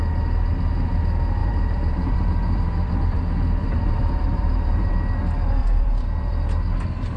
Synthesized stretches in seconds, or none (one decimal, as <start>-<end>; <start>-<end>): 1.4-3.2; 3.6-4.9; 5.6-6.3

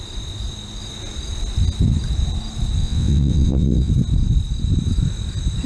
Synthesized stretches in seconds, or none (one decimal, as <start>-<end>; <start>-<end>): 2.8-3.9